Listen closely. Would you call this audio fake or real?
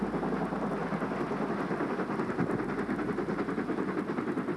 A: real